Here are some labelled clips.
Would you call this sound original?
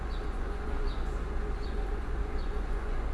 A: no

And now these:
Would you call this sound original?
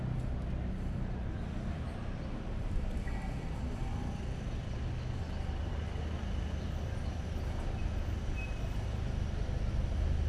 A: yes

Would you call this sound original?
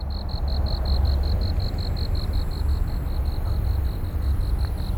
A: yes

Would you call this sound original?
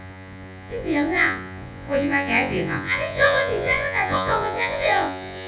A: no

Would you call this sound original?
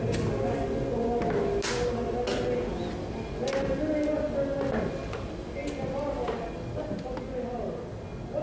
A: yes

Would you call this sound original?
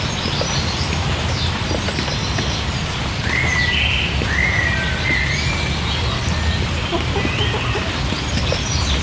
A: yes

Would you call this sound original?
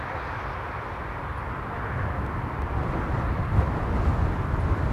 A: yes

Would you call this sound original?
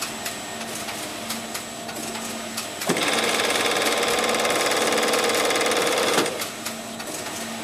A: yes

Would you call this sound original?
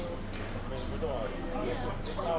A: yes